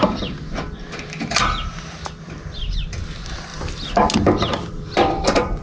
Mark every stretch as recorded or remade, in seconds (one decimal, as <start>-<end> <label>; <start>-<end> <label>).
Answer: 0.0-5.6 recorded